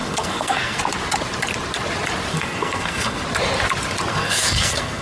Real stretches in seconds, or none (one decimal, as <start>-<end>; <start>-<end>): 0.8-2.3; 3.2-4.1